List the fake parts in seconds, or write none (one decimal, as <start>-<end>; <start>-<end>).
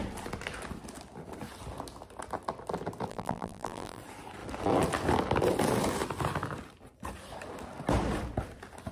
3.1-4.0